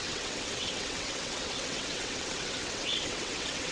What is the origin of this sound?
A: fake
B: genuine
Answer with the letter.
A